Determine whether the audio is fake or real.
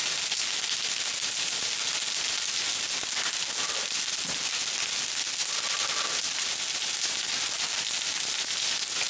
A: real